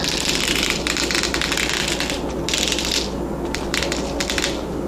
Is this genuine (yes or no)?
yes